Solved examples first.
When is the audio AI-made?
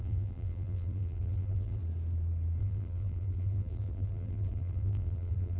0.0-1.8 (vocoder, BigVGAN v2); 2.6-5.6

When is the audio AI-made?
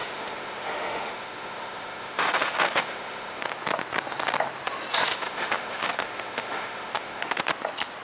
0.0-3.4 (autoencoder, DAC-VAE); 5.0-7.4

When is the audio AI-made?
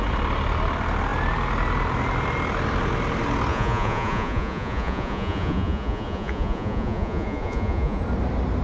3.5-8.0 (vocoder, Vocos)